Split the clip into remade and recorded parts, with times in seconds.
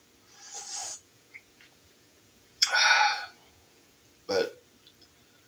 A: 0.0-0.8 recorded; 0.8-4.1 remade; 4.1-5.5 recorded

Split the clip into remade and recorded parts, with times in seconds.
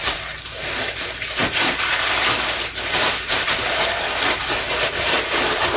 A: 0.0-5.8 recorded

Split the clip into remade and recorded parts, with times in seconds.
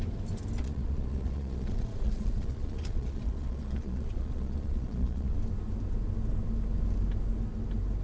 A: 0.0-0.6 recorded; 0.6-5.4 remade; 5.4-8.0 recorded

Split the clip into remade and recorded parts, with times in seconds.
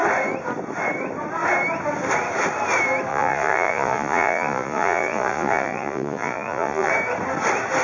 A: 0.0-3.1 recorded; 3.1-6.9 remade; 6.9-7.8 recorded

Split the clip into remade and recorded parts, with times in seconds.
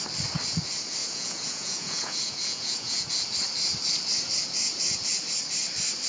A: 0.0-1.0 recorded; 1.0-3.1 remade; 3.1-6.1 recorded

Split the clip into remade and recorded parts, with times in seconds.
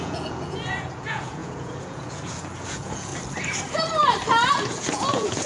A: 0.0-3.1 remade; 3.1-4.5 recorded; 4.5-5.5 remade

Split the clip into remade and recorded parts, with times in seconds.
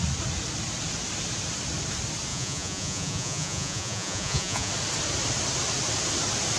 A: 0.0-2.3 recorded; 2.3-4.7 remade; 4.7-6.6 recorded